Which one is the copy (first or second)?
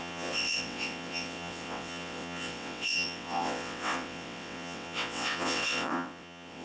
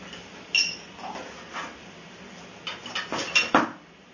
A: first